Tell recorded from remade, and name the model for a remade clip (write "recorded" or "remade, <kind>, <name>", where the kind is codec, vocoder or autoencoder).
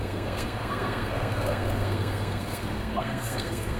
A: remade, codec, SNAC